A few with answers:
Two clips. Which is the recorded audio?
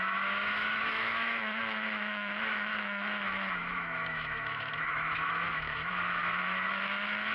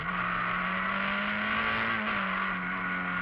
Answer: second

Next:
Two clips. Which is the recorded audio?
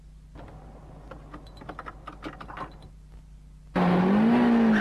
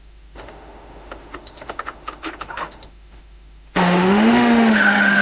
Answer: first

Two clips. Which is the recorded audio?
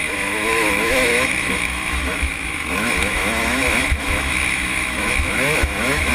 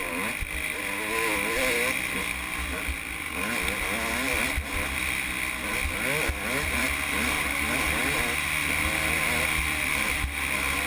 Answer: second